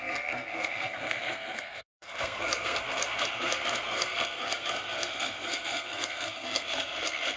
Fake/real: fake